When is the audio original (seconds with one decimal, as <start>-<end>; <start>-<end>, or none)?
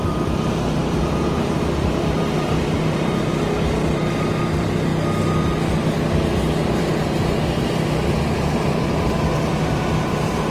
4.9-6.6